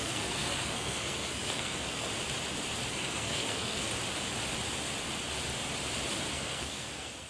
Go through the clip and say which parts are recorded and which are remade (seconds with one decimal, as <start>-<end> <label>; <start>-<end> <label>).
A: 0.0-2.1 remade; 2.1-2.9 recorded; 2.9-3.9 remade; 3.9-6.3 recorded; 6.3-7.3 remade